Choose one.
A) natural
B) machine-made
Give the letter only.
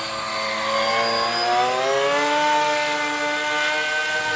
A